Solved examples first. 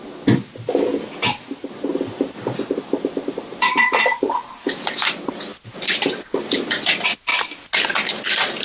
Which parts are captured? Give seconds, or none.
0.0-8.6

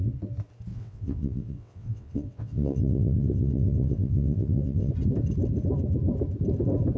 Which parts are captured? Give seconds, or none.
0.0-0.7; 4.9-7.0

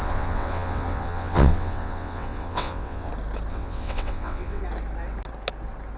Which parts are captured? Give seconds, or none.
3.1-3.5; 4.6-6.0

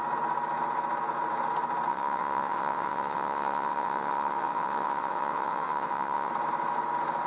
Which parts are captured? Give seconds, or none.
0.0-1.9; 6.3-7.3

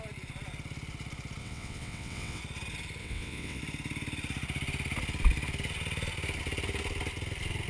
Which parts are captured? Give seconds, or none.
0.0-1.4; 2.4-3.0; 3.6-7.7